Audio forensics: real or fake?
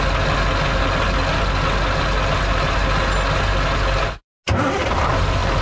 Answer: real